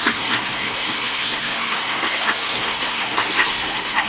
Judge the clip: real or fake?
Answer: fake